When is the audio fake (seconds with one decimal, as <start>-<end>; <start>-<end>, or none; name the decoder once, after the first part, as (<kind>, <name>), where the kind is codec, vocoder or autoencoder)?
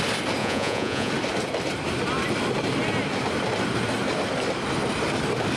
0.4-1.1 (vocoder, Vocos)